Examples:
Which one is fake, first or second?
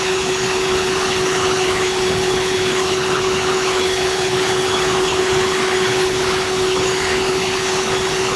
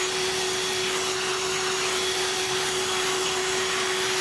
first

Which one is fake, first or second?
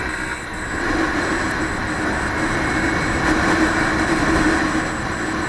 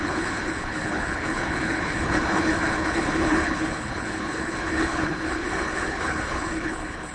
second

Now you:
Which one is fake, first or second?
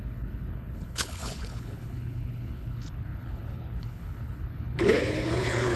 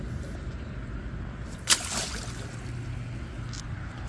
first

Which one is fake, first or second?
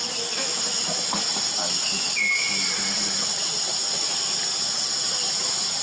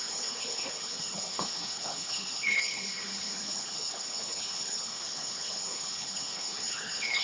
second